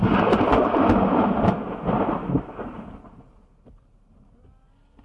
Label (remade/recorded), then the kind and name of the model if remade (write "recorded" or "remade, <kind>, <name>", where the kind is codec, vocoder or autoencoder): recorded